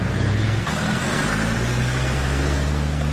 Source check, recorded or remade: remade